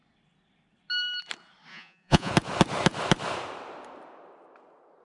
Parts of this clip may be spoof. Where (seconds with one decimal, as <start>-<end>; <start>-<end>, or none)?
1.7-2.3